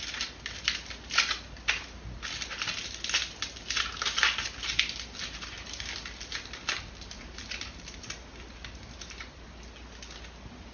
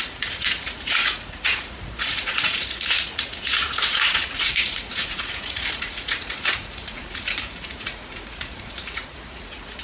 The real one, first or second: first